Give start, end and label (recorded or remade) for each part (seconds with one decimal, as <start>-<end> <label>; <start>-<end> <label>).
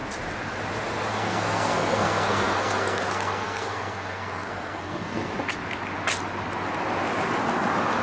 0.0-1.1 recorded; 1.1-5.3 remade; 5.3-8.0 recorded